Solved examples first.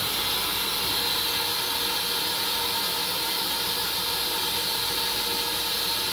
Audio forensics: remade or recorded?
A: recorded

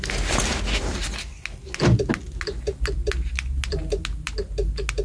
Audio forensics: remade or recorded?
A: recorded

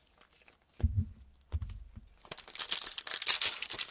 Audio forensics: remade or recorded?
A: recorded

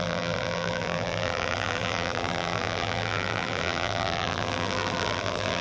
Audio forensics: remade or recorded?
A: remade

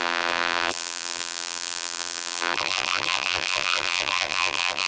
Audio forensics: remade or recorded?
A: remade